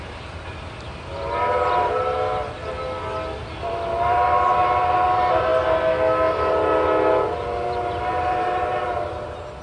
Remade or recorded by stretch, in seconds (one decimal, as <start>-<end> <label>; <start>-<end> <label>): 0.0-9.6 recorded